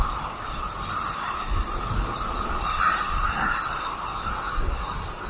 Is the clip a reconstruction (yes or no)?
no